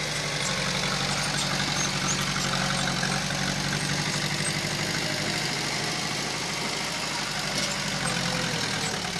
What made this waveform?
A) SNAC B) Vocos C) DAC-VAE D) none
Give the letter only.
D